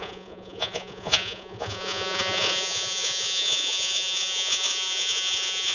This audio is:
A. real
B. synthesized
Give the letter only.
B